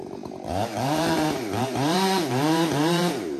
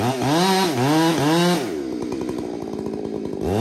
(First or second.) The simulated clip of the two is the first